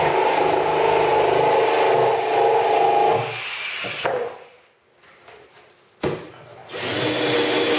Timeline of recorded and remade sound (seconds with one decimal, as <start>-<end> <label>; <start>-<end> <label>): 0.0-6.6 recorded; 6.6-7.1 remade; 7.1-7.8 recorded

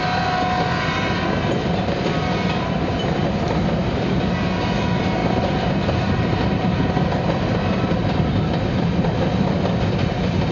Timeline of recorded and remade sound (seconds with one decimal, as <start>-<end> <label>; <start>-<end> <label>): 0.0-5.2 recorded; 5.2-6.9 remade; 6.9-10.5 recorded